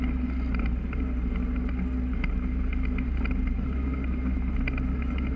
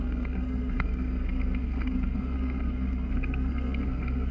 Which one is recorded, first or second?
first